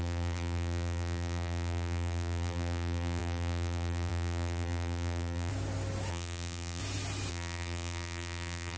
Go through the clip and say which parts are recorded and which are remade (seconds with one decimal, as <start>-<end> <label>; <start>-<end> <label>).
0.0-5.5 remade; 5.5-6.1 recorded; 6.1-6.8 remade; 6.8-7.3 recorded; 7.3-8.8 remade